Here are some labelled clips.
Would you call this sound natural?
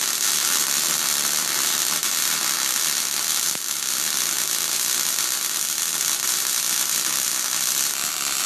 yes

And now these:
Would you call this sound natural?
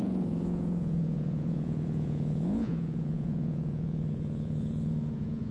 no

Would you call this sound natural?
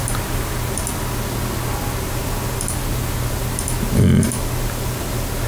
yes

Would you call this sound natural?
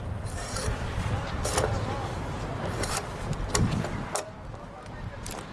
yes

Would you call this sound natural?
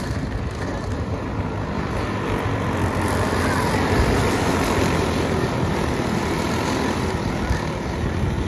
yes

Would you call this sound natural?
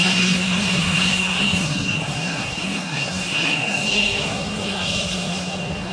no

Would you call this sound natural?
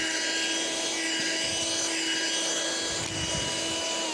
yes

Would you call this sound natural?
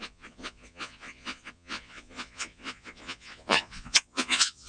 no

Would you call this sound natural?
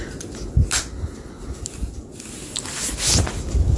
yes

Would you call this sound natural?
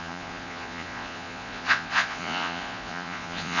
no